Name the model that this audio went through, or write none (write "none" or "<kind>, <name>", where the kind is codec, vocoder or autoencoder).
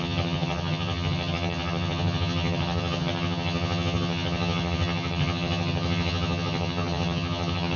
vocoder, HiFi-GAN